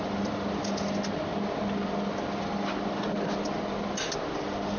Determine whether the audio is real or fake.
real